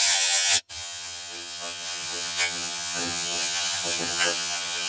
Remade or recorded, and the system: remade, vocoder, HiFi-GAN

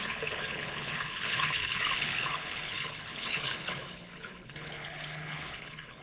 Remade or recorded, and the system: remade, codec, HILCodec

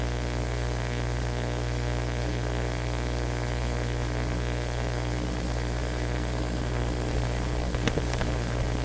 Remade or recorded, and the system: remade, codec, SNAC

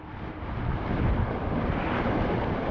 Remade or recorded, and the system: recorded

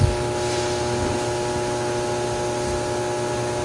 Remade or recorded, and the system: recorded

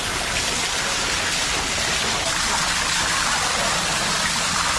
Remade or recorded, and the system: recorded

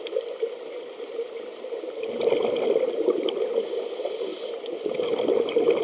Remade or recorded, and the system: recorded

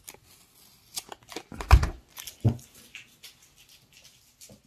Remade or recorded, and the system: recorded